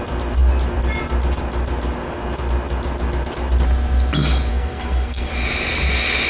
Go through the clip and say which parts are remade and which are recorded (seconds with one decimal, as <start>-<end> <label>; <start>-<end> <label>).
0.0-4.5 recorded; 4.5-5.3 remade; 5.3-6.3 recorded